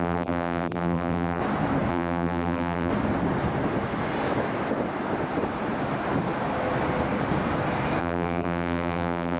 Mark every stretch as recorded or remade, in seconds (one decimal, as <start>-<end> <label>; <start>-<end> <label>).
0.0-1.4 remade; 1.4-1.9 recorded; 1.9-2.9 remade; 2.9-8.0 recorded; 8.0-9.4 remade